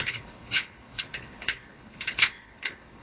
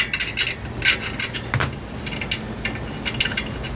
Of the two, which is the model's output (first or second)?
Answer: first